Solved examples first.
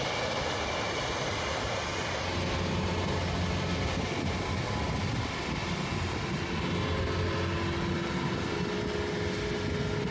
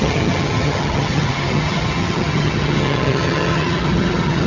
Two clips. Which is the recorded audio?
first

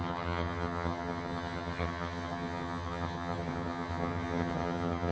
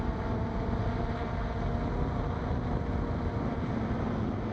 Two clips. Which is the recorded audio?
second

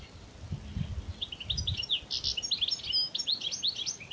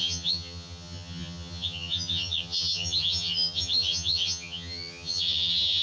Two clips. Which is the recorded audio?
first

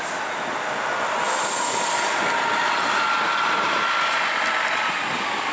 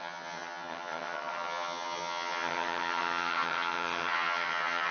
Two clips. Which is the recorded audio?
first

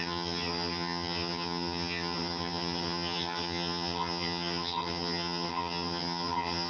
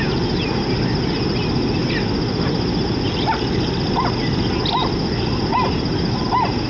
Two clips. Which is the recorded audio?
second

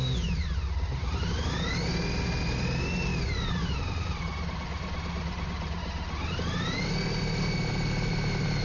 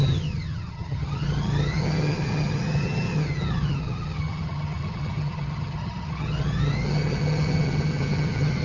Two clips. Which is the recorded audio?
first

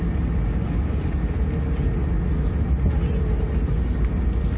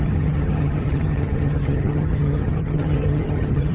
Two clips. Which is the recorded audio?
first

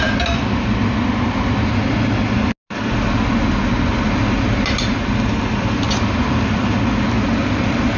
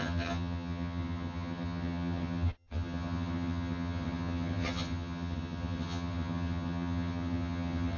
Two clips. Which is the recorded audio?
first